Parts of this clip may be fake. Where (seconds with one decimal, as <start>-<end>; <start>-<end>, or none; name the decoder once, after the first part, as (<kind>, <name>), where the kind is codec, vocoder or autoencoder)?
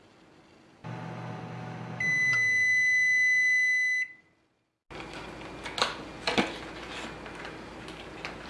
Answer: none